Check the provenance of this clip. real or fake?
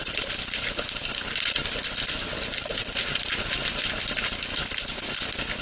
real